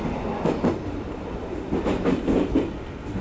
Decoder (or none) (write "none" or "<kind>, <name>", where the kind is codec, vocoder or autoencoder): none